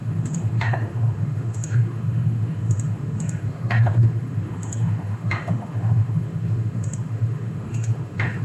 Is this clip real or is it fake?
fake